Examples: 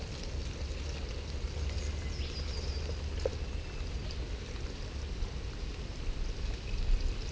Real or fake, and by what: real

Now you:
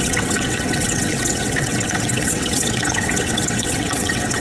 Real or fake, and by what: fake, vocoder, WaveNeXt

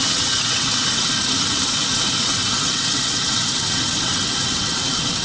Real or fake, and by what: fake, vocoder, WaveNeXt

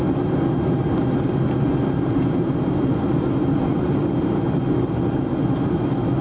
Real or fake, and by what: real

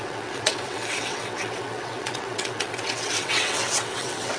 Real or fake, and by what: fake, vocoder, WaveNeXt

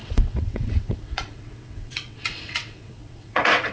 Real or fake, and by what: fake, vocoder, WaveNeXt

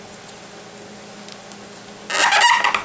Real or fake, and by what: real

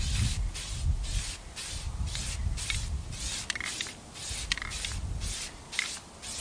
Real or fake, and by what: real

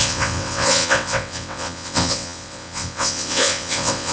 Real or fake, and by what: fake, vocoder, WaveNeXt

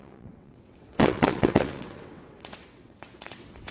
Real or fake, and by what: fake, vocoder, WaveNeXt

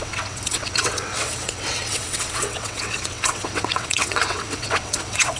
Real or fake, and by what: fake, vocoder, WaveNeXt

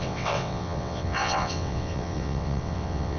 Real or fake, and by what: fake, vocoder, WaveNeXt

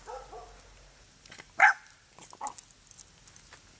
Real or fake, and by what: real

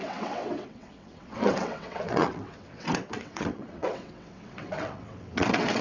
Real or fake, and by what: fake, vocoder, WaveNeXt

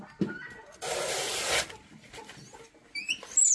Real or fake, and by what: real